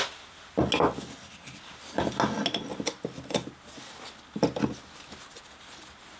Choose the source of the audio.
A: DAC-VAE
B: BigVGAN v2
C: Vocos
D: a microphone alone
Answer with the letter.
D